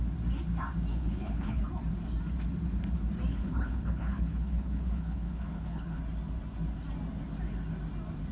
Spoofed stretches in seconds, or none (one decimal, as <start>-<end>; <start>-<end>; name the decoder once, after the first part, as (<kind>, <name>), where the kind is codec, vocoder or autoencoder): 0.9-1.6 (codec, HILCodec); 3.3-6.0